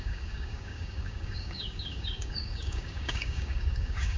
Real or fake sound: fake